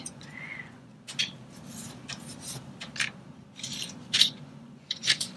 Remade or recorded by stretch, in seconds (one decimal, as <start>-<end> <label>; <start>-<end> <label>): 0.0-0.9 remade; 0.9-3.9 recorded; 3.9-5.4 remade